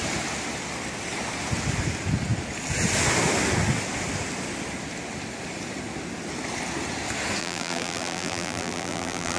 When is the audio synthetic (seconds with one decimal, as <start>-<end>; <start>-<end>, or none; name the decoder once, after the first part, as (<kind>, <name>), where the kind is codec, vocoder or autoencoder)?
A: 7.4-9.4 (vocoder, BigVGAN v2)